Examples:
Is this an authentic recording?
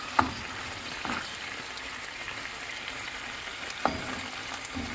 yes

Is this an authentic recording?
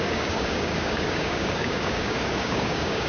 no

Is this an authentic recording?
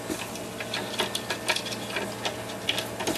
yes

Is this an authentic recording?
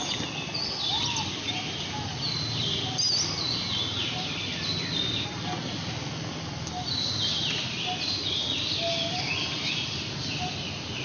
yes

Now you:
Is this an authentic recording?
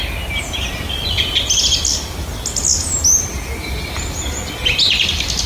yes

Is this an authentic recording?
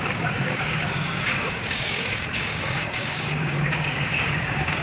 no